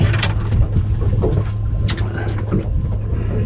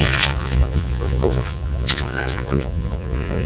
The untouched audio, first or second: first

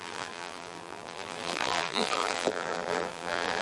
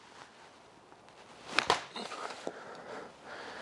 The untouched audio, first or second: second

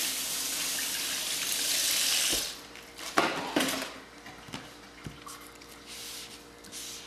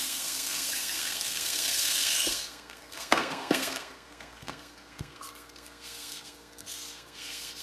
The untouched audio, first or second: first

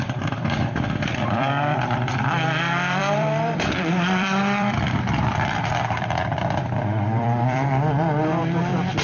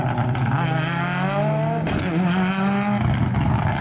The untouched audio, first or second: second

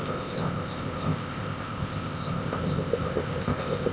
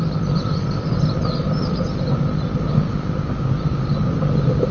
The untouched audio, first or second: second